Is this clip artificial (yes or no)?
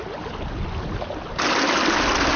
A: no